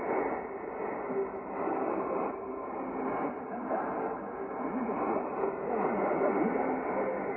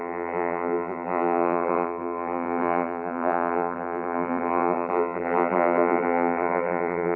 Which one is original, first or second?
first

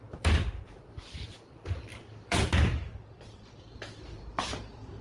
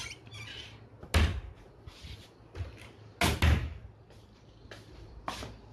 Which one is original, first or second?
second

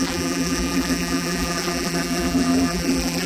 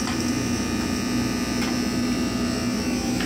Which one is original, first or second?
second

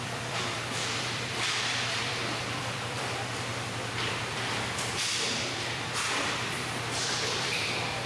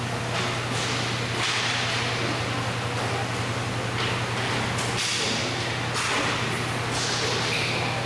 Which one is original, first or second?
second